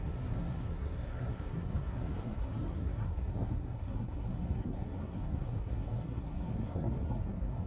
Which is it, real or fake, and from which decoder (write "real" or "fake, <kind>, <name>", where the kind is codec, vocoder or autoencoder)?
fake, codec, SNAC